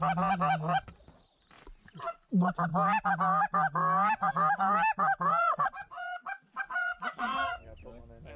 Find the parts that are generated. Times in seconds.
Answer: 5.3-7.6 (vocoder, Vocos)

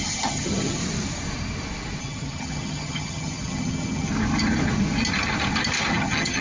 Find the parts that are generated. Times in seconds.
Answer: 0.0-0.8 (vocoder, HiFi-GAN); 2.0-4.1; 5.9-6.4

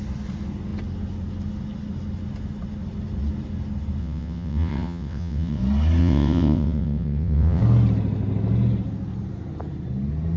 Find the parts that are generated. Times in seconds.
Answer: 4.0-5.6 (vocoder, WaveNeXt); 6.0-7.6

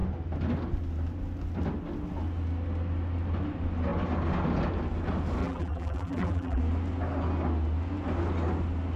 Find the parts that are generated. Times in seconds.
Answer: 5.4-6.6 (vocoder, BigVGAN v2)

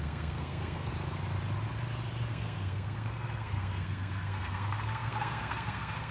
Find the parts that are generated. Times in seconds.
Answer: 0.0-0.9 (codec, SNAC); 2.3-6.1

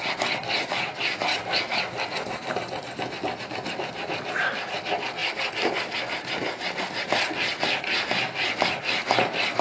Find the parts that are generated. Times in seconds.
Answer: none

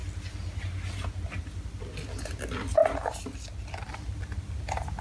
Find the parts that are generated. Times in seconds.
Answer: 2.8-3.9 (vocoder, BigVGAN v2)